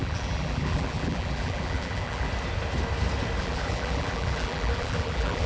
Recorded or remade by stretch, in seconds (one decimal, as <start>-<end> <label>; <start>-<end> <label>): 0.0-2.3 remade; 2.3-3.4 recorded; 3.4-5.5 remade

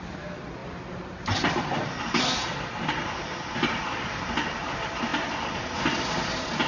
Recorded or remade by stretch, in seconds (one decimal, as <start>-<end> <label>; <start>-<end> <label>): 0.0-6.7 recorded